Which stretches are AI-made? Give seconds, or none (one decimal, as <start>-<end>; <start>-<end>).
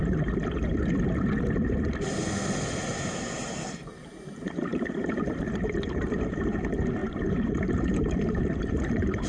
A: 2.9-9.3